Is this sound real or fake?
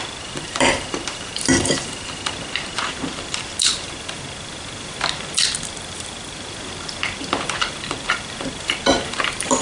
fake